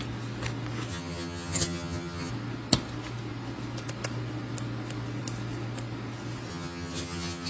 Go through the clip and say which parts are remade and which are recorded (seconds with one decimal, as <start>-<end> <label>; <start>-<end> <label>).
0.0-0.9 recorded; 0.9-2.3 remade; 2.3-6.5 recorded; 6.5-7.5 remade